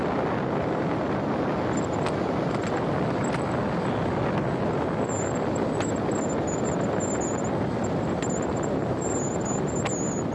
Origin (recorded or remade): recorded